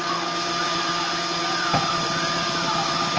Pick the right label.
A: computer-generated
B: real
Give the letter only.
B